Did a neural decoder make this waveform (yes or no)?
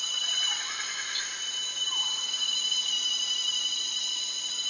no